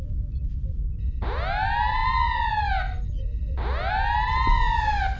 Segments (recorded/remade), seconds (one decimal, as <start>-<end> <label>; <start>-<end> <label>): 0.0-5.2 recorded